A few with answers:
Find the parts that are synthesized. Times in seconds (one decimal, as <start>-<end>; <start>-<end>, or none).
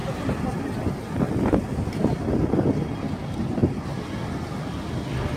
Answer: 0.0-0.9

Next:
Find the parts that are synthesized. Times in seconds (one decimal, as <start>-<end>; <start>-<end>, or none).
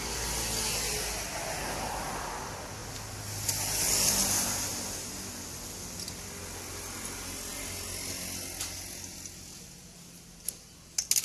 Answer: none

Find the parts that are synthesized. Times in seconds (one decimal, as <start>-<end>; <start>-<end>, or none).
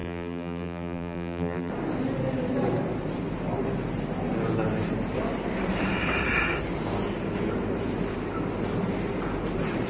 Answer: 0.0-1.7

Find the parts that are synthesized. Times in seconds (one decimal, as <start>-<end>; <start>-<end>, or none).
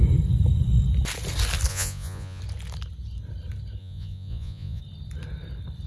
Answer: 1.7-2.4; 3.8-4.8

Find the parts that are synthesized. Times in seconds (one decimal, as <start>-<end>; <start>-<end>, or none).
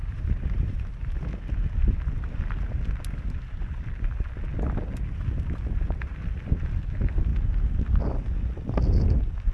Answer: 0.0-1.2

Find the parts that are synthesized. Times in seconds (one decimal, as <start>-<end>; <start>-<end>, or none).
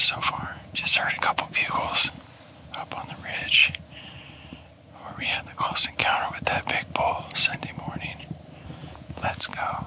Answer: 0.0-1.7; 8.8-9.4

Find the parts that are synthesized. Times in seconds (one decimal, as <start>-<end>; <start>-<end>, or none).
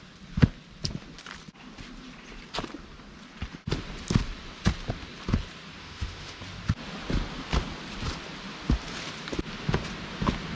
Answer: 5.8-6.4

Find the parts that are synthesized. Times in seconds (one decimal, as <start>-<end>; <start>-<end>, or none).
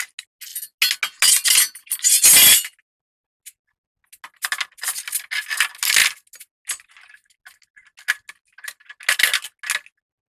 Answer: none